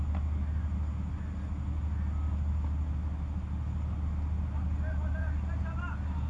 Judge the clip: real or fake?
real